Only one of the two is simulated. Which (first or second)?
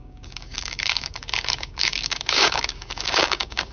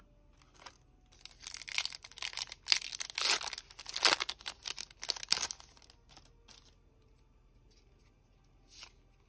first